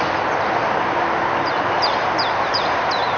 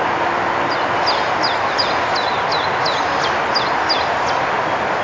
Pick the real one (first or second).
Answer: second